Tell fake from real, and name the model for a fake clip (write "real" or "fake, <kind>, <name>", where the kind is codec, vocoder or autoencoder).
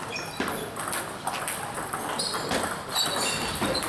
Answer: real